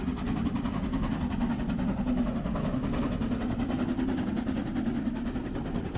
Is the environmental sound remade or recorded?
recorded